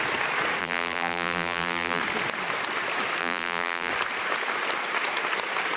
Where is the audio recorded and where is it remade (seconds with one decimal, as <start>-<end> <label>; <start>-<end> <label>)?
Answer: 0.0-0.6 recorded; 0.6-2.0 remade; 2.0-3.2 recorded; 3.2-3.9 remade; 3.9-5.8 recorded